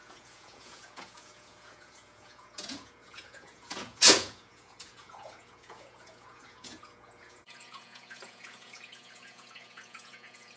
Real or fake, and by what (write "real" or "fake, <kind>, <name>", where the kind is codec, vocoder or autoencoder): fake, vocoder, Vocos